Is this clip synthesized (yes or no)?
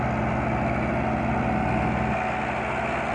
no